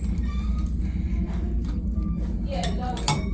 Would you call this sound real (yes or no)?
yes